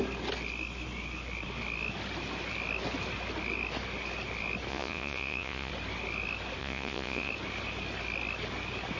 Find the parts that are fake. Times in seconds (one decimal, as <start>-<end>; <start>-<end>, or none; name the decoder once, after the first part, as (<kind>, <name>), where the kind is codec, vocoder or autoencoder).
4.7-5.7 (vocoder, Vocos); 6.6-7.3